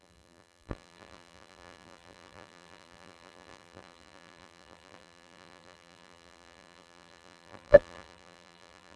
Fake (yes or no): yes